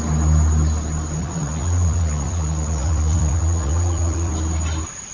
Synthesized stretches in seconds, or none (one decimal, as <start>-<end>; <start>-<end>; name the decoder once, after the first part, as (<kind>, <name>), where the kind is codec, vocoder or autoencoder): 1.2-4.3 (vocoder, Vocos)